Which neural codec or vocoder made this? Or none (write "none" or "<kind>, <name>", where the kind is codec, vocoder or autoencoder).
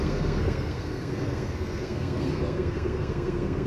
codec, SNAC